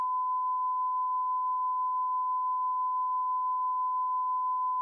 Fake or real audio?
real